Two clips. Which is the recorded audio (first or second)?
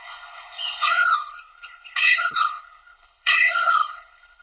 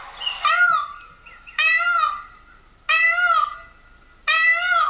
second